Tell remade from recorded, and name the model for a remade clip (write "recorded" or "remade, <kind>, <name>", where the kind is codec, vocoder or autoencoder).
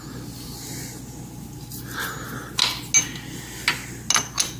recorded